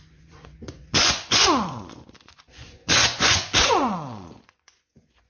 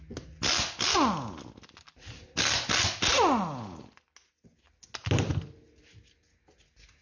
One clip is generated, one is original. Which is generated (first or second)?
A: first